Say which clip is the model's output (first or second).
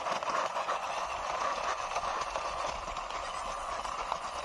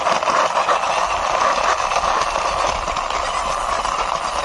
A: first